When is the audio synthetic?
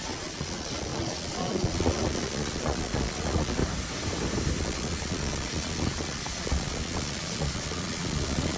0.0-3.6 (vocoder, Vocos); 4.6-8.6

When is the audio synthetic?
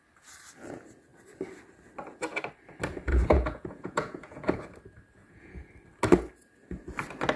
3.1-4.6 (vocoder, Vocos); 5.2-5.7